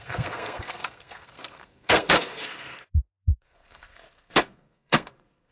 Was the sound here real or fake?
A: fake